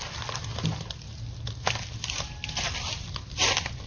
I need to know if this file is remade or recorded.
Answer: recorded